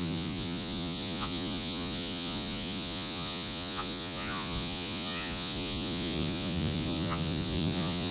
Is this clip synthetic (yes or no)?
yes